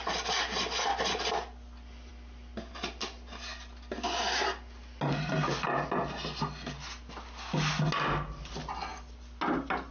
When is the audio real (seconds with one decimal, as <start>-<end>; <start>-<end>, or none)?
0.0-9.9